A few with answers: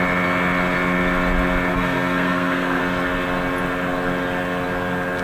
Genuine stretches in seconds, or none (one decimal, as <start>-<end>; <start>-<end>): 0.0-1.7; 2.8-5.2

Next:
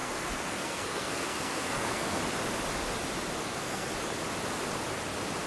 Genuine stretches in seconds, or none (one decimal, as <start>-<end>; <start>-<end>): 2.2-3.4; 3.9-5.5

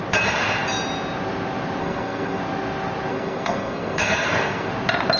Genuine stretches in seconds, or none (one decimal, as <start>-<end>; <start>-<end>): 0.0-1.8; 2.4-3.1; 4.7-5.2